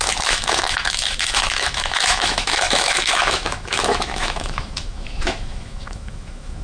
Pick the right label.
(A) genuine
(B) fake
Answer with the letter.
B